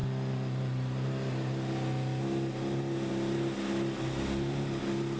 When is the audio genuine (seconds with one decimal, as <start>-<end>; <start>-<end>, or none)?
0.0-5.2